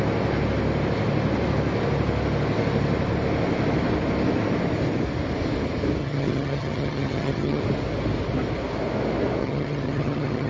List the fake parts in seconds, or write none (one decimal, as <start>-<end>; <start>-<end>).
6.0-7.6; 9.4-10.5